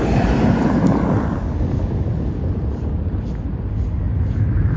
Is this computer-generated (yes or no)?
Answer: no